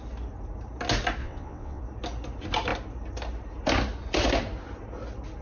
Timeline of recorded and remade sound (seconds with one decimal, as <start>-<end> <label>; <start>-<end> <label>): 0.0-1.2 recorded; 1.2-1.8 remade; 1.8-5.4 recorded